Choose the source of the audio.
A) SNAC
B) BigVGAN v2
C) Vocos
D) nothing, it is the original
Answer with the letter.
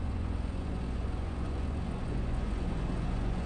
C